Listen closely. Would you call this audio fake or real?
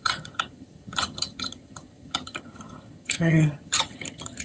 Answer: fake